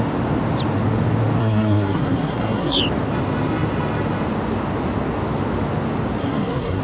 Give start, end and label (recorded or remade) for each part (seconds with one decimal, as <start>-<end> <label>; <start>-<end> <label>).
0.0-1.4 recorded; 1.4-2.8 remade; 2.8-6.2 recorded; 6.2-6.8 remade